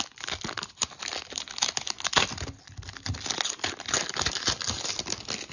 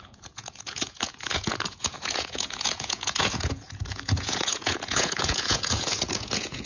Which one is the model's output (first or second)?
second